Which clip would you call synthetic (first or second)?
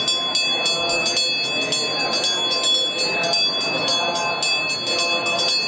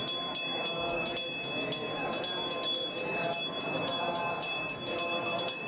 second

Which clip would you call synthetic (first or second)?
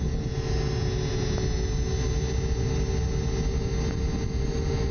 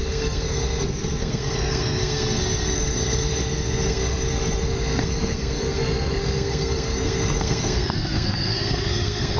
second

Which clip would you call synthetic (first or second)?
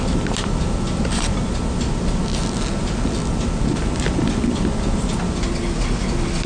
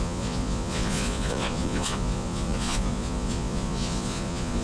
second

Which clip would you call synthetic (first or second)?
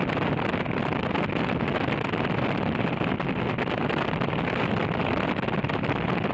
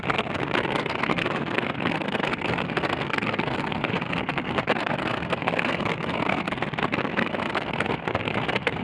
second